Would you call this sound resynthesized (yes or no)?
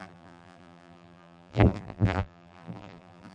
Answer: yes